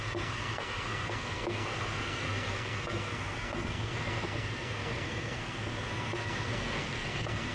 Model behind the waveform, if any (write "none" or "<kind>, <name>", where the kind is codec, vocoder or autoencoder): codec, SNAC